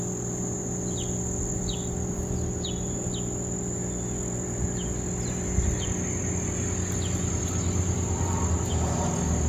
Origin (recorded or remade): recorded